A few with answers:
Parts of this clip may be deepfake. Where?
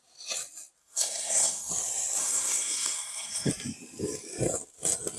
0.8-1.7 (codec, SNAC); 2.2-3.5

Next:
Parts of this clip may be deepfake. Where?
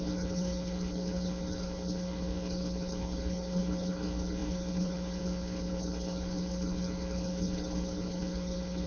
0.0-8.9 (codec, HILCodec)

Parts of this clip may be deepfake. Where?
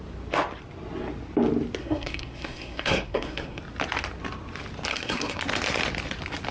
1.8-3.6 (codec, SNAC); 4.9-5.4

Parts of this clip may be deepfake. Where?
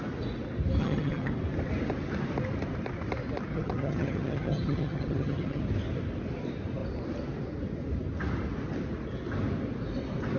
0.8-1.3 (vocoder, HiFi-GAN); 3.5-5.6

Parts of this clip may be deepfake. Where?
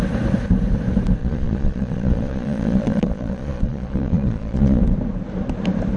1.2-4.8 (vocoder, Vocos)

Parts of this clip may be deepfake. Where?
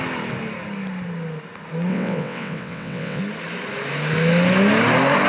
1.9-3.2 (vocoder, WaveNeXt)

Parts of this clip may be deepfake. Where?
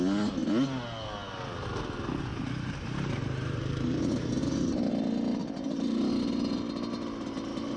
2.3-4.3 (vocoder, BigVGAN v2); 5.4-6.1